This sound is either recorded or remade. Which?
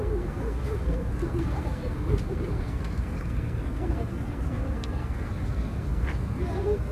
remade